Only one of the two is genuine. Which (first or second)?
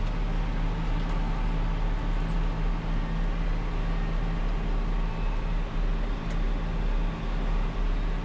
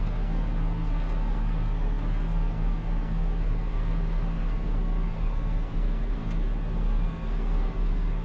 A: first